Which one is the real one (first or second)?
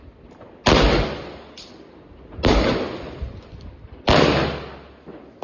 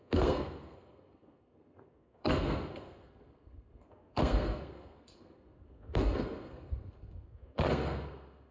first